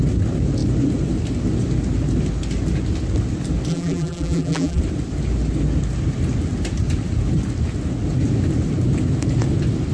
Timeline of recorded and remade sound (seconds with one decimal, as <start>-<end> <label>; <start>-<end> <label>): 0.0-3.7 recorded; 3.7-4.8 remade; 4.8-9.9 recorded